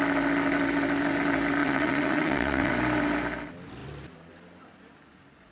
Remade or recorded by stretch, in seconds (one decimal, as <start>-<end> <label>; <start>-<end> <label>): 0.0-1.6 recorded; 1.6-2.7 remade; 2.7-5.5 recorded